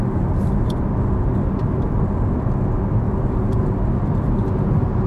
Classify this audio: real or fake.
real